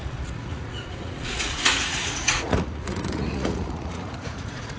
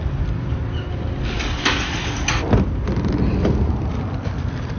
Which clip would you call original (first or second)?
second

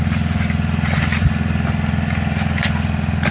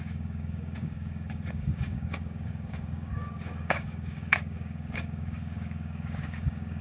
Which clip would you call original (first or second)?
first